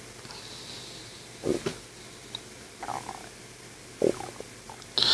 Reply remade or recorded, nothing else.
recorded